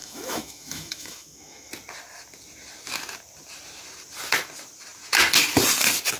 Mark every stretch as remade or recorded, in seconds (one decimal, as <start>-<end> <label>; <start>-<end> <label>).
0.0-1.7 remade; 1.7-6.2 recorded